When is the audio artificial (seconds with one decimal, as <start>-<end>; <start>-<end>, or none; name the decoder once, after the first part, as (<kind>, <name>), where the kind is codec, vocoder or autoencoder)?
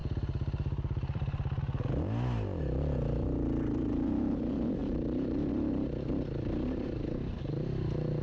0.0-1.6 (vocoder, BigVGAN v2); 4.8-5.5